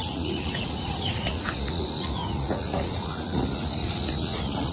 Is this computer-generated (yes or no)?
yes